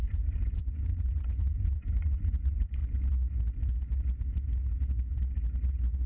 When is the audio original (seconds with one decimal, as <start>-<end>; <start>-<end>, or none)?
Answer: 2.8-6.1